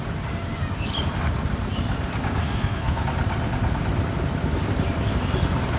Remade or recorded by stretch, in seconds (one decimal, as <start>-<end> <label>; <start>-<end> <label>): 0.0-2.4 recorded; 2.4-3.0 remade; 3.0-5.8 recorded